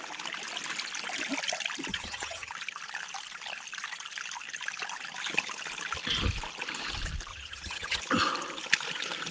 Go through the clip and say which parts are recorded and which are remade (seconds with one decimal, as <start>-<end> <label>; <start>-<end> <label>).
0.0-1.9 recorded; 1.9-2.5 remade; 2.5-7.3 recorded; 7.3-8.0 remade; 8.0-9.3 recorded